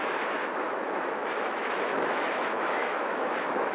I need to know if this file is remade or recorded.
remade